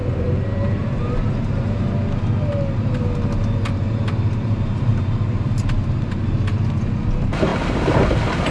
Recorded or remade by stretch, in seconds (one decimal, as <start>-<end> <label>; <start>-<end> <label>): 0.0-1.8 remade; 1.8-8.5 recorded